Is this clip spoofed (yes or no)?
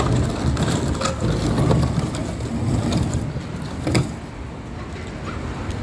no